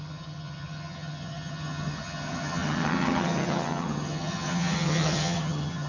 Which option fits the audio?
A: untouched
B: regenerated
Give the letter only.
B